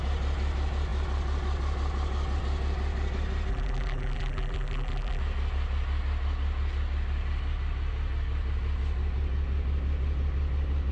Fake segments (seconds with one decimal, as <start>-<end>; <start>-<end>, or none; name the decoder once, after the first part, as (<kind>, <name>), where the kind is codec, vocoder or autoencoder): 3.5-5.2 (vocoder, BigVGAN v2)